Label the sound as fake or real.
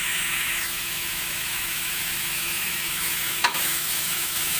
fake